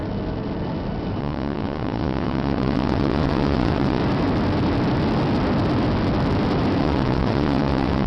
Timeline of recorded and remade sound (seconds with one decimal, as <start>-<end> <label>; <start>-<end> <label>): 0.0-1.2 recorded; 1.2-4.0 remade; 4.0-6.8 recorded; 6.8-8.1 remade